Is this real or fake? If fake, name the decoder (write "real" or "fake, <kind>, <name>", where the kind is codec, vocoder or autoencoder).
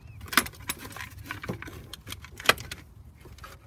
real